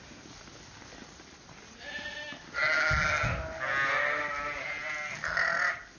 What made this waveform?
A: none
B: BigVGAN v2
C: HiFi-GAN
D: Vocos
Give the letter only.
A